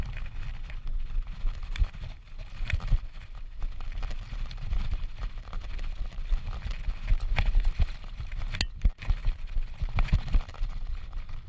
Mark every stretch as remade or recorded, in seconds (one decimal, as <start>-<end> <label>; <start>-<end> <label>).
0.0-1.6 recorded; 1.6-3.4 remade; 3.4-9.2 recorded; 9.2-9.8 remade; 9.8-11.5 recorded